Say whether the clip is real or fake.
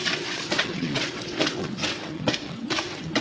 fake